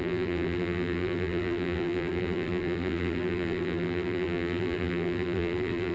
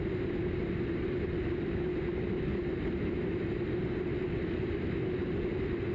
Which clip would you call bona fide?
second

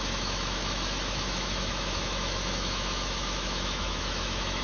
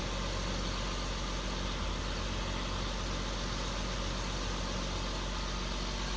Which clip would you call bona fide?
second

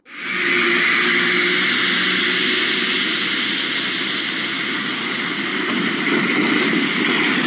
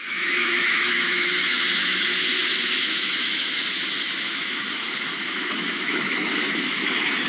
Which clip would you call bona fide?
first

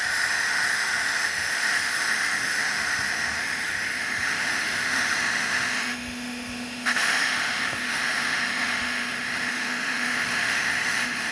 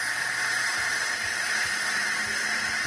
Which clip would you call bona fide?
second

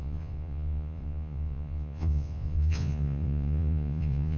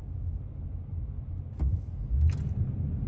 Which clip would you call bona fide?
second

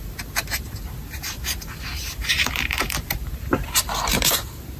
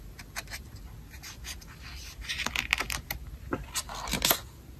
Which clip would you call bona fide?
second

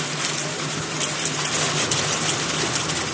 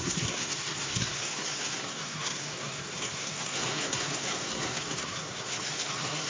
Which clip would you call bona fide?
first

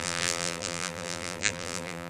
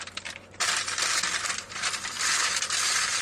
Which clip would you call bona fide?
second